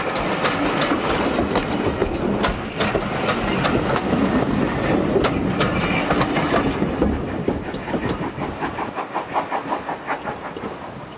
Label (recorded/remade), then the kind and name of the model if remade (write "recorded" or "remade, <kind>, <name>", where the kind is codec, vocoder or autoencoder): recorded